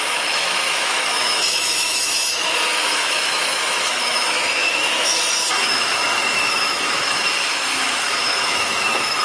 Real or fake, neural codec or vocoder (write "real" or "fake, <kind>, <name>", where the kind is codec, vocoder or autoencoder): fake, autoencoder, DAC-VAE